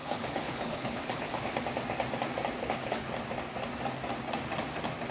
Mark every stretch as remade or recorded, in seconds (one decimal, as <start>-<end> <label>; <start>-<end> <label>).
0.0-1.6 remade; 1.6-2.6 recorded; 2.6-3.1 remade; 3.1-5.1 recorded